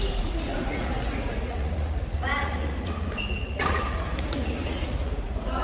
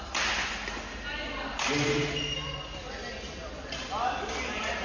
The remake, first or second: first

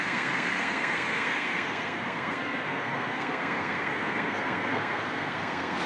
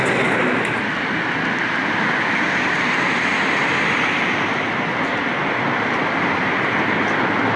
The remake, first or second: first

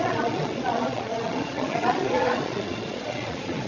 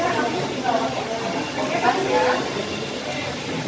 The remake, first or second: first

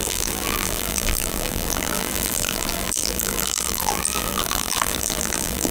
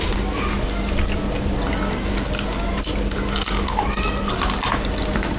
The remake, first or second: first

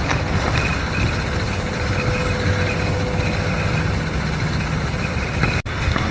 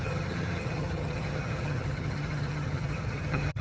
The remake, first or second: second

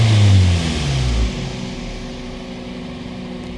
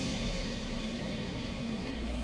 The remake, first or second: second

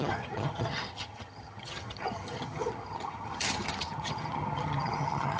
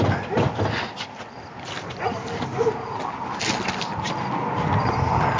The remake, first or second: first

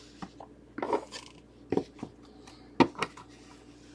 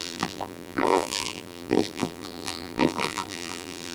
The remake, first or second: second